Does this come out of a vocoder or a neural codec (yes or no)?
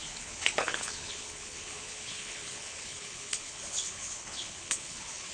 yes